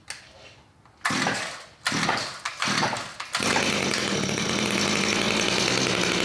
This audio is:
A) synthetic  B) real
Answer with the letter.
B